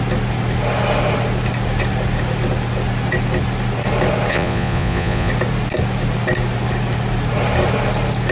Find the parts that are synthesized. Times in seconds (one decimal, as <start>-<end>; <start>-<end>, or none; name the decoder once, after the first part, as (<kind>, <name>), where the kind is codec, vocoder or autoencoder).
4.3-5.3 (vocoder, Vocos)